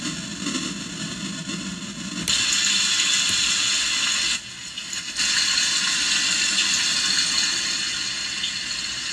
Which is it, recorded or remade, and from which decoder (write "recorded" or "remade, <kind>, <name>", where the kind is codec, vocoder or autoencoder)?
recorded